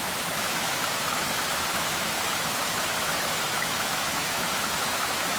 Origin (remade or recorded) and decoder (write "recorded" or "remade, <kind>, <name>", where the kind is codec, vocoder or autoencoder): remade, autoencoder, DAC-VAE